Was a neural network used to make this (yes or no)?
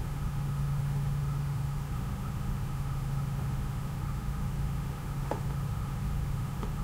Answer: yes